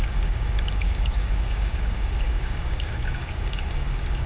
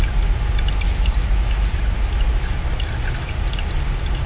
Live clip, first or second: second